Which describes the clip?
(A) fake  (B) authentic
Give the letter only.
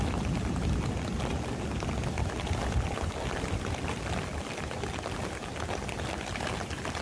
B